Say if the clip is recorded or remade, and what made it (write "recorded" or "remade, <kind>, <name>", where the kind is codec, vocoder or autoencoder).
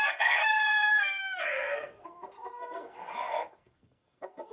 remade, codec, SNAC